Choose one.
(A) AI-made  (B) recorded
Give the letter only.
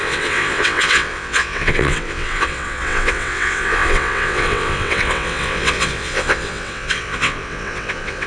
A